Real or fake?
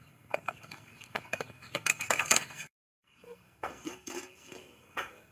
fake